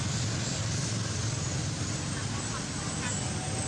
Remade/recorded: recorded